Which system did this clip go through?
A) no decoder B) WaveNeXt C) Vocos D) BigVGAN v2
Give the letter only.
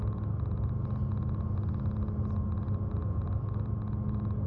A